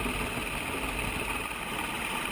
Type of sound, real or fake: real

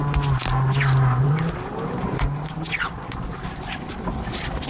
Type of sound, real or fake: real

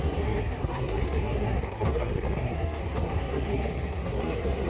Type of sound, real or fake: fake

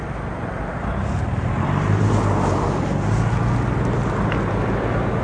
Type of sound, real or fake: real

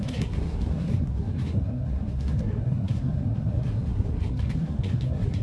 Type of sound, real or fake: fake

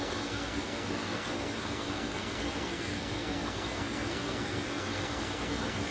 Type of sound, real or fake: fake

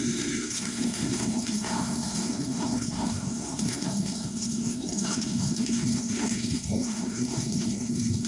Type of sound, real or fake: fake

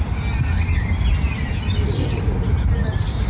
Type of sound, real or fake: real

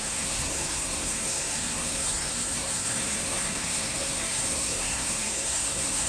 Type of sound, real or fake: fake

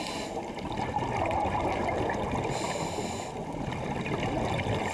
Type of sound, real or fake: real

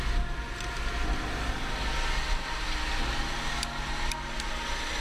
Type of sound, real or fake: real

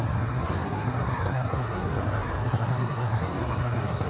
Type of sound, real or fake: fake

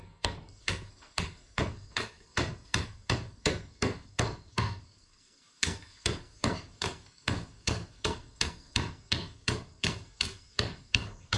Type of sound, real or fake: fake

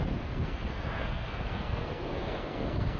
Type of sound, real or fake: fake